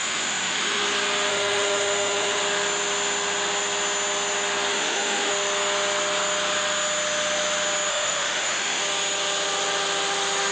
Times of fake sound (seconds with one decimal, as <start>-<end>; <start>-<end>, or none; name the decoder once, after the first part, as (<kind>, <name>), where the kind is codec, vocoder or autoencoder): 0.0-0.8 (autoencoder, DAC-VAE); 1.3-2.4; 4.7-5.3; 7.9-8.8